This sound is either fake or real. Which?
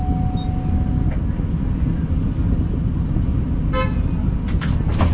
real